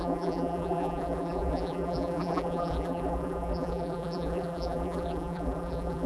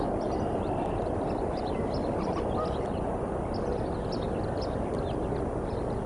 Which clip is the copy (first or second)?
first